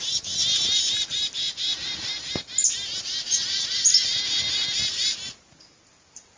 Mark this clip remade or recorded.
recorded